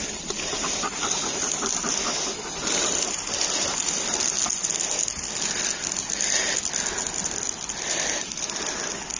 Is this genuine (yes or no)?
yes